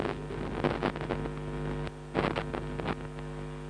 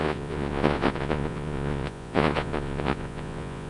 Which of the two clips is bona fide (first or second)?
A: first